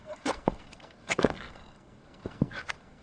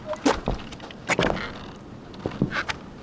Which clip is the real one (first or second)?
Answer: second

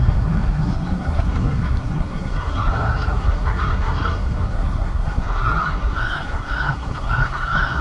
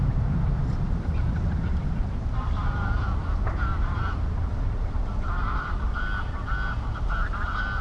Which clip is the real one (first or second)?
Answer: second